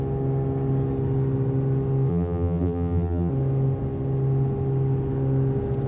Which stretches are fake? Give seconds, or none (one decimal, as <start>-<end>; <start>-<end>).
2.1-3.3